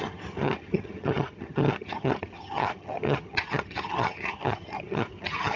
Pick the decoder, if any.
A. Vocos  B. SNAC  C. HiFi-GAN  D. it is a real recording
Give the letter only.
C